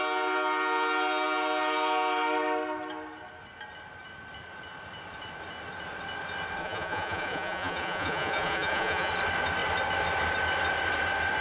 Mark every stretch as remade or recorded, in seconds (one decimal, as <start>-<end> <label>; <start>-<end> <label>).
0.0-6.6 recorded; 6.6-9.1 remade; 9.1-11.4 recorded